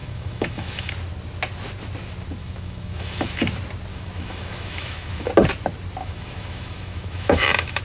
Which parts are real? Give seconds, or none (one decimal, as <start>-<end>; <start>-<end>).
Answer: 0.9-2.4; 3.4-3.9; 5.3-6.0